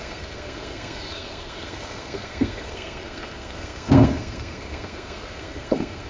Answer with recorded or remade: remade